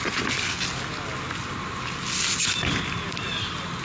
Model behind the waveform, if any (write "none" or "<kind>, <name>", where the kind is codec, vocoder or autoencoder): none